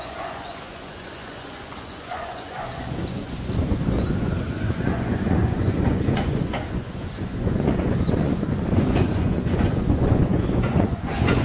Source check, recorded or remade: remade